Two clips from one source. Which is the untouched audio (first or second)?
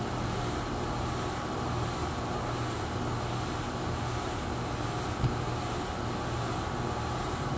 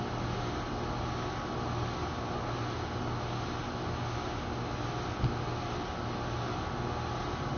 second